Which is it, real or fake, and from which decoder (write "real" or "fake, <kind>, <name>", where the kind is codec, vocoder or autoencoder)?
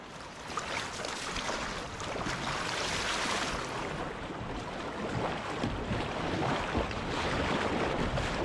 real